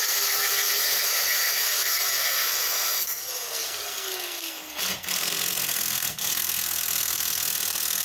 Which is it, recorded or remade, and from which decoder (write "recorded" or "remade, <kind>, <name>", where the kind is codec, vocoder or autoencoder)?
remade, codec, SNAC